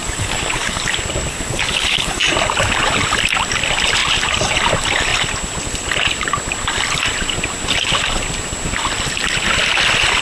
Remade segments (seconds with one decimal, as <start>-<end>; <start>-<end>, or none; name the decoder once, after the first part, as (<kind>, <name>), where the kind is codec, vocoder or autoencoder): 0.0-0.8 (codec, DAC); 1.3-2.3